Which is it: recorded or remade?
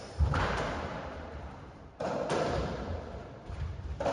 remade